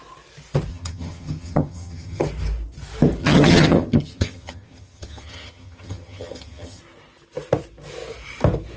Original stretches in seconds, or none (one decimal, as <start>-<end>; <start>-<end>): 0.0-0.7; 2.2-3.2; 6.8-8.8